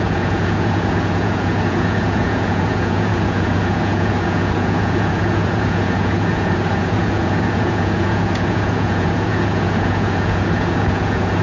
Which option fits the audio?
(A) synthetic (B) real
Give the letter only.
A